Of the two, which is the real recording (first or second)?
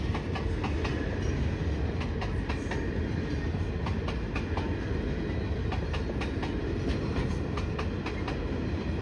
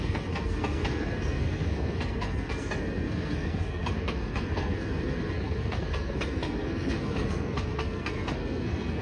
first